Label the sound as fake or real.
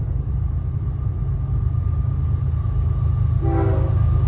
real